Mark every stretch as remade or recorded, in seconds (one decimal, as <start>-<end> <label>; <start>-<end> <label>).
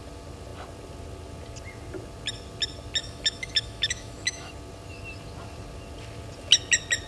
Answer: 0.0-3.0 recorded; 3.0-4.5 remade; 4.5-7.1 recorded